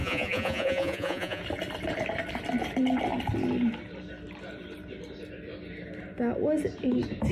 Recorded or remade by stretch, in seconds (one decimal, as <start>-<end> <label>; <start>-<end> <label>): 0.0-1.4 remade; 1.4-7.3 recorded